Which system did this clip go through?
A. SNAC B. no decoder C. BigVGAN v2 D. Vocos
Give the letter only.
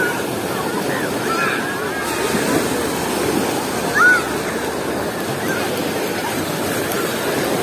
B